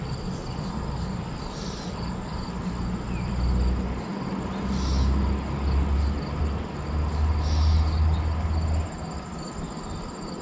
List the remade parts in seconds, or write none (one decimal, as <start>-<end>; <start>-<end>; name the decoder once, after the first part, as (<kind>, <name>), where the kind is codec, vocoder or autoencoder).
none